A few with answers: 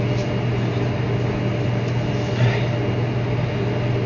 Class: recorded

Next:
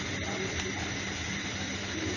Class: recorded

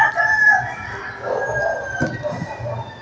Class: recorded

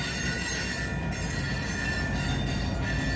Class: recorded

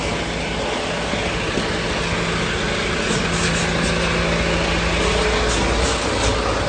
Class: recorded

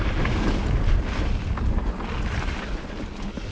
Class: recorded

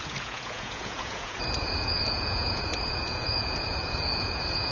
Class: remade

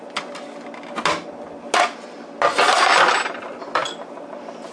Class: recorded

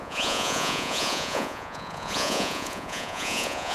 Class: remade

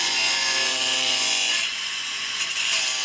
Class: remade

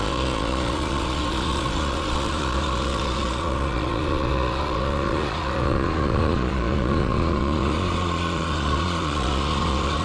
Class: remade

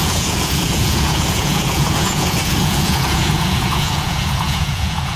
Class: remade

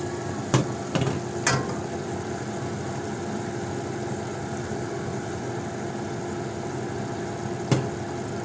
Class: recorded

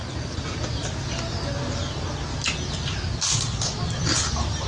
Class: recorded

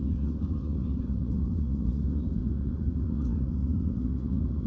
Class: remade